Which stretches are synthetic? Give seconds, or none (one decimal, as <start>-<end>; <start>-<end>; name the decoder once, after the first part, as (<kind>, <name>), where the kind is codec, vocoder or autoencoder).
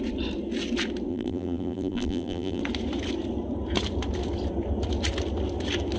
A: 1.1-2.6 (vocoder, BigVGAN v2)